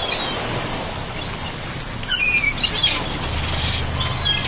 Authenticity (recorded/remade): recorded